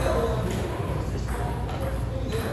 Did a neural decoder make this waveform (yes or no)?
no